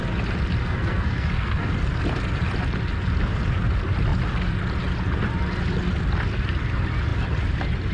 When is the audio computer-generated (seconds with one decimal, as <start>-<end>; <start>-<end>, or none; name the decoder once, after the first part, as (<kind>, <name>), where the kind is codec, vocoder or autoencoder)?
0.6-1.7 (codec, SNAC)

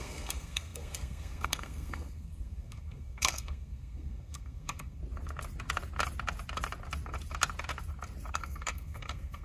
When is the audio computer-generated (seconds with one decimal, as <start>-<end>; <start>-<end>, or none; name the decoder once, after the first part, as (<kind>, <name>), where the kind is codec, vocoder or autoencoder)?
0.0-5.0 (codec, SNAC); 8.3-9.4

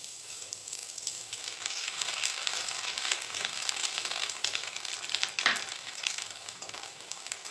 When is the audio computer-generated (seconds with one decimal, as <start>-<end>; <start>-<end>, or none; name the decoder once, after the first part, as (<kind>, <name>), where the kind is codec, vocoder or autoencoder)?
0.0-4.9 (codec, DAC); 5.7-7.5